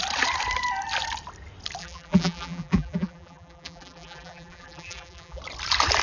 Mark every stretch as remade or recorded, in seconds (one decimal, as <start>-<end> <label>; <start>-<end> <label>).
0.0-1.8 recorded; 1.8-5.4 remade; 5.4-6.0 recorded